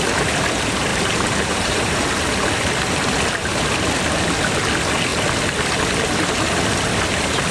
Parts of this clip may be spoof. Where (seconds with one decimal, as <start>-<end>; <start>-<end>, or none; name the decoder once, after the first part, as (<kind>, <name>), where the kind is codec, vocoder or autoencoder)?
0.9-2.1 (vocoder, BigVGAN v2)